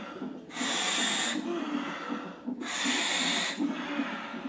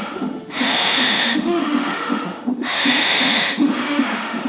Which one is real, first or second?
first